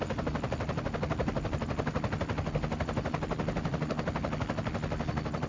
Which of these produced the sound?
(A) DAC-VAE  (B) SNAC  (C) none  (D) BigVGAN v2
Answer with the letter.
C